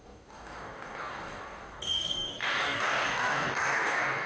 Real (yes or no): no